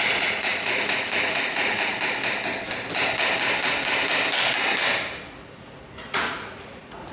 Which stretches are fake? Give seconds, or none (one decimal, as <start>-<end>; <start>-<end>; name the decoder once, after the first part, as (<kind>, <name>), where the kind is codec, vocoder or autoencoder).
0.0-1.9 (vocoder, Vocos); 5.4-7.1

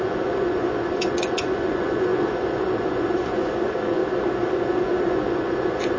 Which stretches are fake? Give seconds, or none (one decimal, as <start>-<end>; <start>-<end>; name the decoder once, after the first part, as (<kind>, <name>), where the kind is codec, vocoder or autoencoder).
0.0-4.0 (vocoder, Vocos); 4.5-6.0

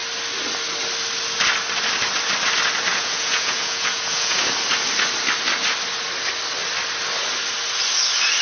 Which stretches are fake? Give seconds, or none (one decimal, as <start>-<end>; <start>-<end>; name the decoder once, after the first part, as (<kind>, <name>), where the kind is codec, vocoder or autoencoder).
2.9-4.5 (vocoder, Vocos)

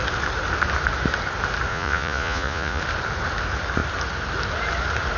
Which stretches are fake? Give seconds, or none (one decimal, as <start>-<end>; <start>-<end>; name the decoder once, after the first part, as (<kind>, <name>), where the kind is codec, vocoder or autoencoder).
1.7-2.8 (vocoder, Vocos)

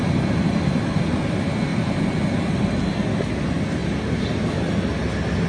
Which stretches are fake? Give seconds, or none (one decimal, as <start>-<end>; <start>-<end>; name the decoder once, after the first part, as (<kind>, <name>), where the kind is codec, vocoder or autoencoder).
none

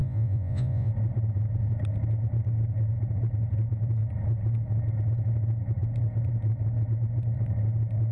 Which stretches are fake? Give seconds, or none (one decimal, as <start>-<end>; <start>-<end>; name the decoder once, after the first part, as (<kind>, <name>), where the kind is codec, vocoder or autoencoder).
0.0-0.9 (vocoder, Vocos)

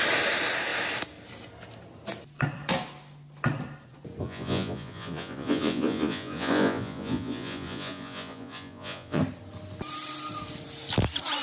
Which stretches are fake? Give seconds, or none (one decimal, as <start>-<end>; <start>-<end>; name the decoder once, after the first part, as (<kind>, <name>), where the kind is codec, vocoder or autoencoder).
4.2-9.2 (vocoder, Vocos)

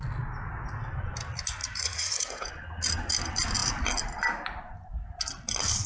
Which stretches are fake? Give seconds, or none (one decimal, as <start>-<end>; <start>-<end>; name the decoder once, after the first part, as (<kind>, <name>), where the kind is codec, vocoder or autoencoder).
1.6-2.5 (vocoder, Vocos)